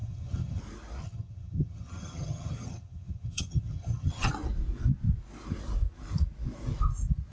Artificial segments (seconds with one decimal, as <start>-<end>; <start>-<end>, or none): 0.0-0.6; 1.0-4.3